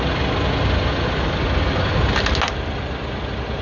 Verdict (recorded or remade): recorded